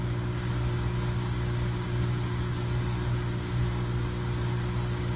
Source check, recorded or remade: recorded